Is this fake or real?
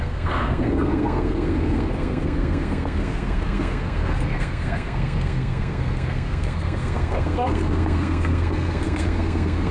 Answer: fake